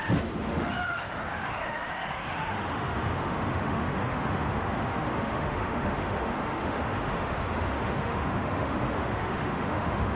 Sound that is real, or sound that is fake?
fake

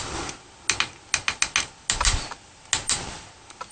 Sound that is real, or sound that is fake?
real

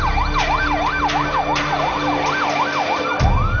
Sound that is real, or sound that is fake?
real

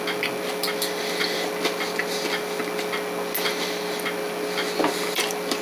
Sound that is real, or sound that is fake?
real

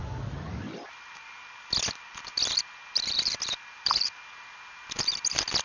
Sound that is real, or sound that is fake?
real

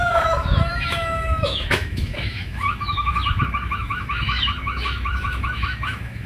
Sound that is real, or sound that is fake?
fake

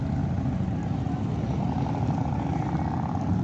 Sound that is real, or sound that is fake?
real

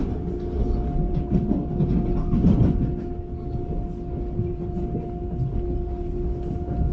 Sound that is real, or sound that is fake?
real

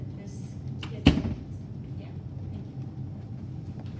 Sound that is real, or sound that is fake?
real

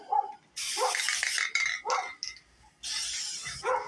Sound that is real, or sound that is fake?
real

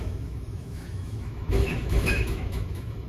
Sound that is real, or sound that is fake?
fake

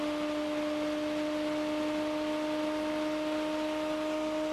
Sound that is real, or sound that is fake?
real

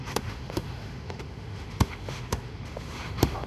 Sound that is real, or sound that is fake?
fake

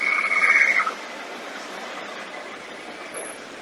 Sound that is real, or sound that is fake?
real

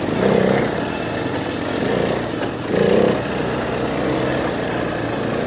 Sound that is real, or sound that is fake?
real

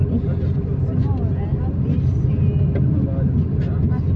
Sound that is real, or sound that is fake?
real